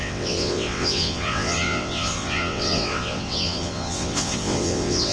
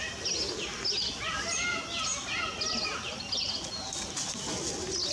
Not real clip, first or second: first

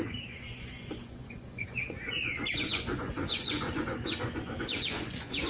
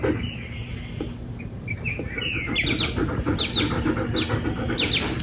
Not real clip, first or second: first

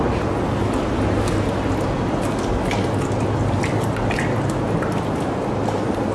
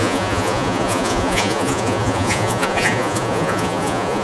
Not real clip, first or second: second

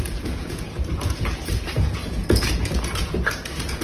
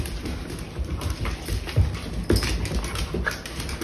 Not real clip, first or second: first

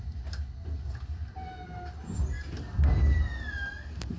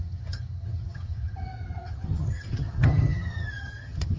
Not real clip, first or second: second